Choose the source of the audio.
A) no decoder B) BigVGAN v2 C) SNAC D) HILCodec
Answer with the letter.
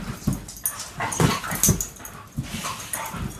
A